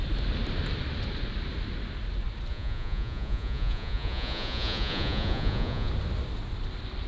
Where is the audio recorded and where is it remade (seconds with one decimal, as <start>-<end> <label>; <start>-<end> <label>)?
0.0-2.5 recorded; 2.5-5.9 remade; 5.9-7.1 recorded